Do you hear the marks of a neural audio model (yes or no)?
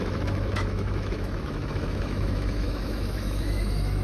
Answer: yes